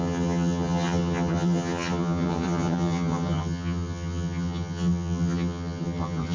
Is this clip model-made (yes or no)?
yes